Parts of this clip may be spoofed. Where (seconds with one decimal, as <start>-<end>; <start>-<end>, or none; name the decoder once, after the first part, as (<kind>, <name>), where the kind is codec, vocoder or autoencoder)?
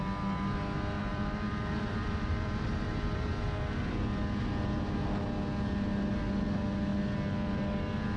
1.1-3.3 (vocoder, BigVGAN v2)